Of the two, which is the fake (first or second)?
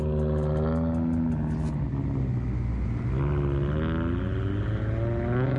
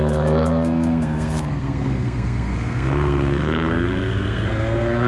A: second